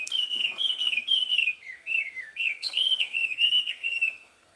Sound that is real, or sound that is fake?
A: fake